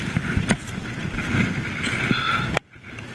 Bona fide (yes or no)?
yes